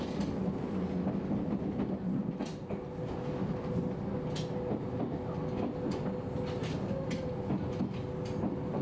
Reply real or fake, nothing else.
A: real